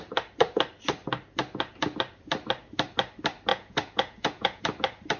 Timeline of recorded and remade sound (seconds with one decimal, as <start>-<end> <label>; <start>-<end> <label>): 0.0-3.5 recorded; 3.5-4.6 remade; 4.6-5.2 recorded